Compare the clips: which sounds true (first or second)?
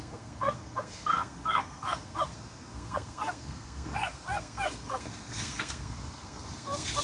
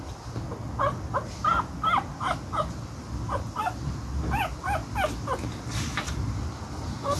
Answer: second